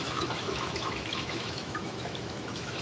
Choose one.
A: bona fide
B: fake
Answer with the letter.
B